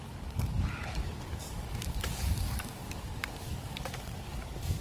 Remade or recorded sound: remade